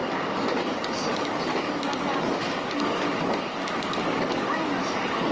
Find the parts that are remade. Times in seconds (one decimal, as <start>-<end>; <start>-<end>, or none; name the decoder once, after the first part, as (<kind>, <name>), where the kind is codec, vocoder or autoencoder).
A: 0.0-5.3 (codec, DAC)